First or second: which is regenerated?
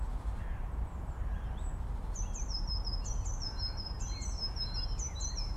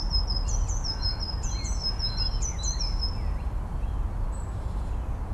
first